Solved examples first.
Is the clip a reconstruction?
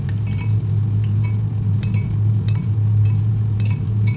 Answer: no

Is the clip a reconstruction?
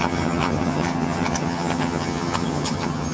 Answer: yes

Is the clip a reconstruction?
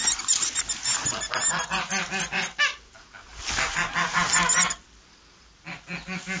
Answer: no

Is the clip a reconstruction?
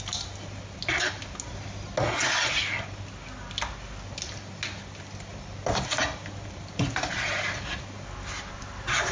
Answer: no